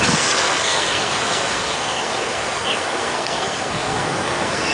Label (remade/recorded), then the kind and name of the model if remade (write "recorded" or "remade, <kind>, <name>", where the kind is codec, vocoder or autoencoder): remade, codec, SNAC